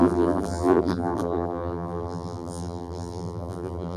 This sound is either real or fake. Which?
fake